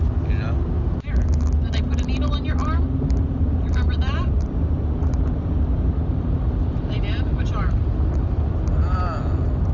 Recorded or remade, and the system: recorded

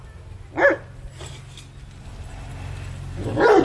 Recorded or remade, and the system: recorded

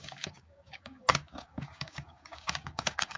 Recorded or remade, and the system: remade, codec, DAC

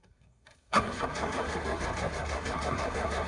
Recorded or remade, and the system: remade, codec, SNAC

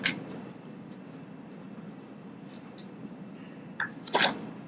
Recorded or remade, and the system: recorded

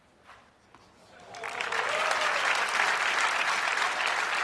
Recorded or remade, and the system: recorded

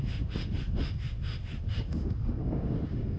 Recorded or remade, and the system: remade, autoencoder, DAC-VAE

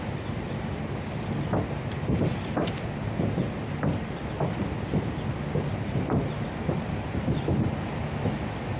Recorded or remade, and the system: recorded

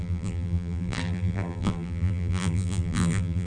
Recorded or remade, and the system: remade, vocoder, BigVGAN v2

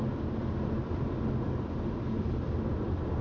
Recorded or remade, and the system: recorded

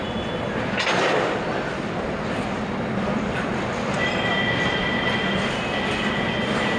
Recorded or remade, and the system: recorded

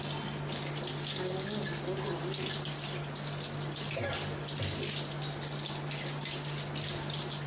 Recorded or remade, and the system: recorded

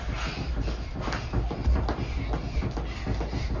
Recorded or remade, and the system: recorded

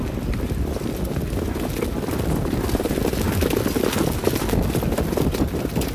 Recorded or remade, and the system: recorded